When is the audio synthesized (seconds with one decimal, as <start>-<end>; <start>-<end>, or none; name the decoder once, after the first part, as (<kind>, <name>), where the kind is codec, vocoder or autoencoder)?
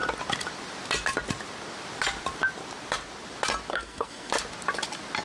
3.7-4.3 (codec, SNAC)